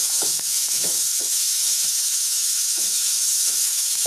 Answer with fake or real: fake